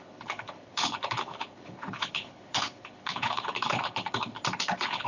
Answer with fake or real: fake